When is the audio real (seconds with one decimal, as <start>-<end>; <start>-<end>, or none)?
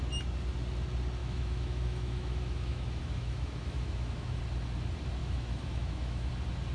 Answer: 0.0-1.2; 4.4-5.2; 6.3-6.7